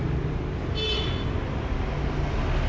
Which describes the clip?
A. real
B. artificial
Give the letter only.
A